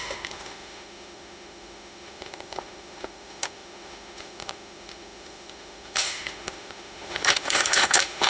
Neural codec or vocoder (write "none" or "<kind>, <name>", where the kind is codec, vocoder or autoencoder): autoencoder, DAC-VAE